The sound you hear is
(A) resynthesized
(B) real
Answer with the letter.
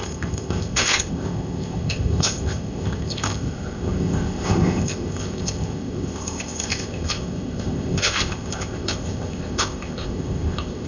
A